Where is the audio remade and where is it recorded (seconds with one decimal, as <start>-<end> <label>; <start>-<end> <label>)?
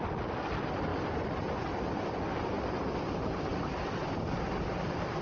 0.0-0.9 remade; 0.9-1.7 recorded; 1.7-5.2 remade